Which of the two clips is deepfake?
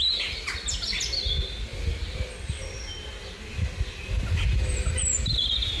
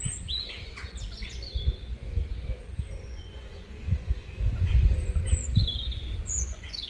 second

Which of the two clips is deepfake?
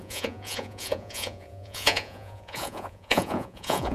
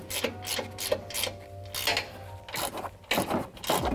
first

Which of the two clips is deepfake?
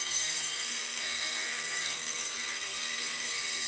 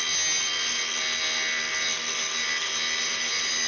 first